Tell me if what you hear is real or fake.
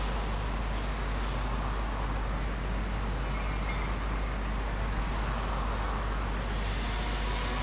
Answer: real